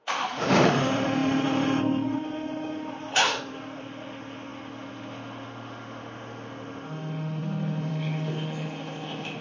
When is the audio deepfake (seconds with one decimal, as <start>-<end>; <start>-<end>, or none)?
0.0-9.4